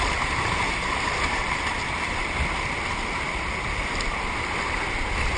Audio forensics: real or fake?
real